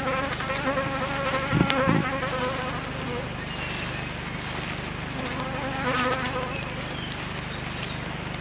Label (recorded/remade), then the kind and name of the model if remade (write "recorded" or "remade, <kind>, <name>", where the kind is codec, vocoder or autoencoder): recorded